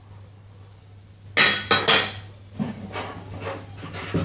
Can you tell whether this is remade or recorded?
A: recorded